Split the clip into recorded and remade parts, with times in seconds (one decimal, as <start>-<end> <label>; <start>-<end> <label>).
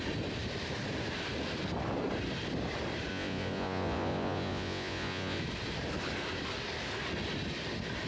0.0-3.1 recorded; 3.1-5.4 remade; 5.4-8.1 recorded